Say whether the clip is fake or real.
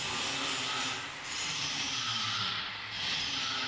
fake